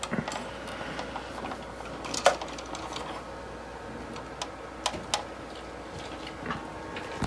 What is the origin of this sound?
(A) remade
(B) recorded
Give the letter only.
B